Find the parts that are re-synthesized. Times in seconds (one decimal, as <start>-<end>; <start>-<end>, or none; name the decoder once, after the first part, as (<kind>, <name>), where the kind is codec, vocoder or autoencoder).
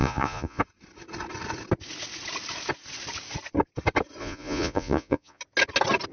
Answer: 0.0-0.6 (vocoder, Vocos); 4.2-5.4